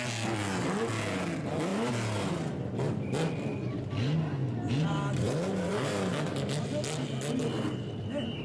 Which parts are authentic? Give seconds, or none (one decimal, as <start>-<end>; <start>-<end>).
0.0-8.4